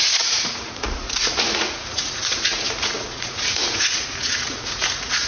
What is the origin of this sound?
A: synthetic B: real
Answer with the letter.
A